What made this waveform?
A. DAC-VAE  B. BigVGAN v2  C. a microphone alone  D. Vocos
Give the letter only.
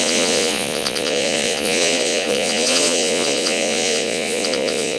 D